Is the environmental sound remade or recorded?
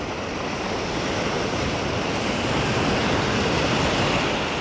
recorded